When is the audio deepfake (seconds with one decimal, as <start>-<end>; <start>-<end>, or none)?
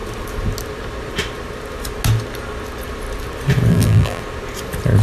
3.7-4.2